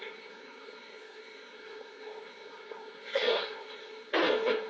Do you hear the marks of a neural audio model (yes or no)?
yes